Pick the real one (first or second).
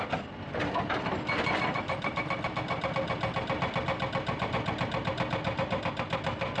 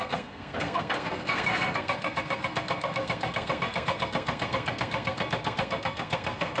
first